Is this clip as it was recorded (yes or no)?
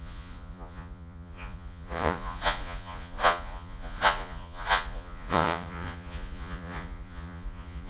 no